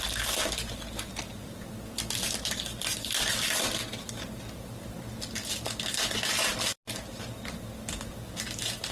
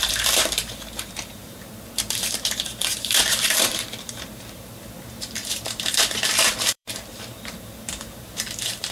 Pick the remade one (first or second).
second